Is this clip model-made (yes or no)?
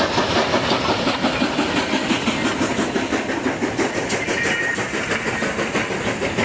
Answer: no